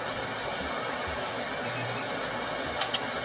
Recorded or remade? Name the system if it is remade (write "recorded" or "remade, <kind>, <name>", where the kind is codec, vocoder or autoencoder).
recorded